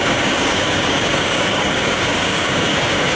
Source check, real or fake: fake